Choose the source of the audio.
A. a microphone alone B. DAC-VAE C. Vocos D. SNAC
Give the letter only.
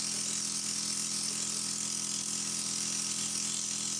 A